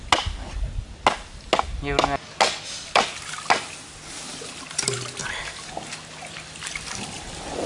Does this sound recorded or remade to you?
recorded